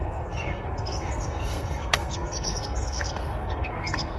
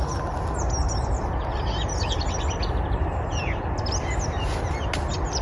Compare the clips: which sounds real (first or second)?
second